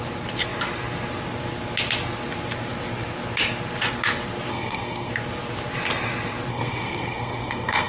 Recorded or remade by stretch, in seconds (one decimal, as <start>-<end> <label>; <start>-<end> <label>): 0.0-4.5 recorded; 4.5-5.1 remade; 5.1-6.5 recorded; 6.5-7.9 remade